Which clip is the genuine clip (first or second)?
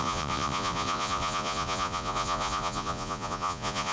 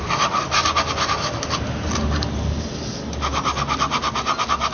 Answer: second